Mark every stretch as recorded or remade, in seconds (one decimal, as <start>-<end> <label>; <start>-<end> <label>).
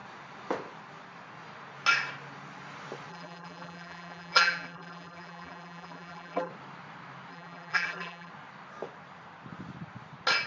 0.0-3.1 recorded; 3.1-6.5 remade; 6.5-7.3 recorded; 7.3-8.3 remade; 8.3-10.5 recorded